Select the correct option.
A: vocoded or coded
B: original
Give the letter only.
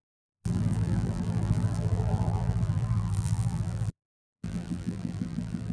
A